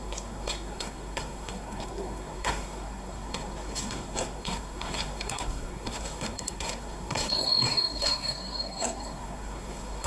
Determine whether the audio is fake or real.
fake